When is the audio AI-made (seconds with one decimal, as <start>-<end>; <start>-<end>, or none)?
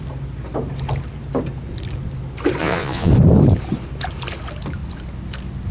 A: 2.6-3.1